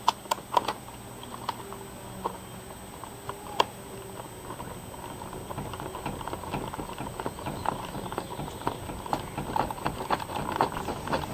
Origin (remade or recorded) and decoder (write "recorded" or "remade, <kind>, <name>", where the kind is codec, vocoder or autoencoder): recorded